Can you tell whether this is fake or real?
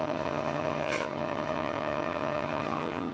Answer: fake